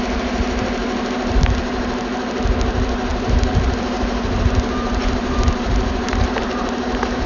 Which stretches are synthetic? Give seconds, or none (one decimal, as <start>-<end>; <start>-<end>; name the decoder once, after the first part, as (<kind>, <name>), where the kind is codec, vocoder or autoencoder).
3.1-7.3 (vocoder, BigVGAN v2)